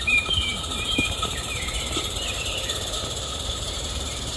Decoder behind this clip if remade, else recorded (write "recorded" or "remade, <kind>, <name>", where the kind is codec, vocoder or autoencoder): remade, vocoder, BigVGAN v2